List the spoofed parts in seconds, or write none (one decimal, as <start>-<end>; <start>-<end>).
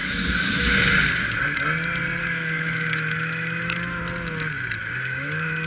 0.0-0.6; 2.2-4.0; 4.8-5.7